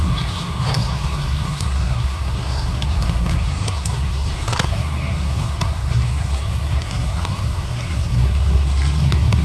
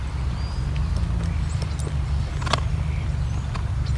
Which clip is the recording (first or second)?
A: second